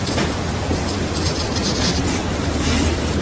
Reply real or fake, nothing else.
fake